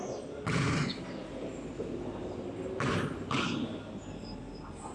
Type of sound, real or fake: real